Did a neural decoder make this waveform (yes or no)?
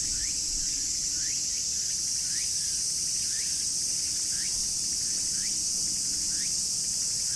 no